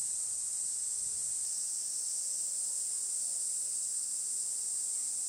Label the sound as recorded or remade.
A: recorded